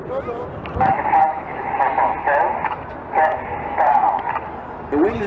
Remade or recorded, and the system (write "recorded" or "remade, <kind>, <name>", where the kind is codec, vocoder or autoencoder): recorded